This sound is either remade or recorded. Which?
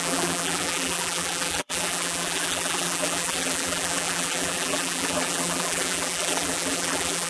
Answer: remade